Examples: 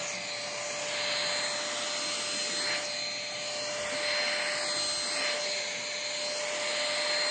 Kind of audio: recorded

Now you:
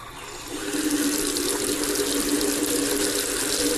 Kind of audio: recorded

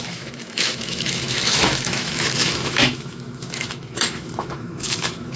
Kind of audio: remade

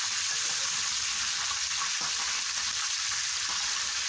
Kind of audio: recorded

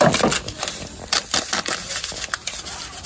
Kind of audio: recorded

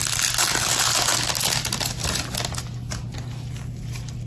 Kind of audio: recorded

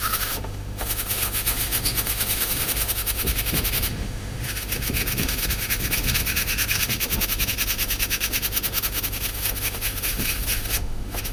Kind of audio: remade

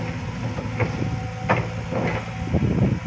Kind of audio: recorded